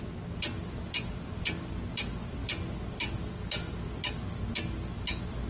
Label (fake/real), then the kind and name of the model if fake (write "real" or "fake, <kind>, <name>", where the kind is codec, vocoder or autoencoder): real